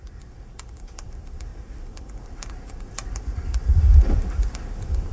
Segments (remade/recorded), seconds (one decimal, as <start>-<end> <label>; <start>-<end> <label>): 0.0-5.1 remade